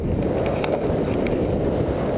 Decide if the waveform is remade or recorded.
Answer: recorded